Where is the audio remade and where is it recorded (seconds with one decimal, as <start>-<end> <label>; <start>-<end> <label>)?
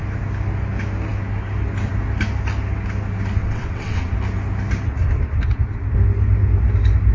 0.0-3.4 recorded; 3.4-4.1 remade; 4.1-7.1 recorded